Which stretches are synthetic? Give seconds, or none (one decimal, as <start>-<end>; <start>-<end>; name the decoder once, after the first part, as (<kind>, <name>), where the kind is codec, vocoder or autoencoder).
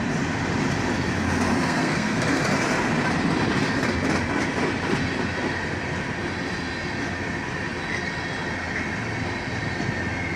1.5-2.4 (codec, SNAC)